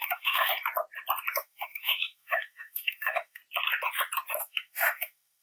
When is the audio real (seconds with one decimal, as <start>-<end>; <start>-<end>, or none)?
0.5-1.4; 3.4-4.4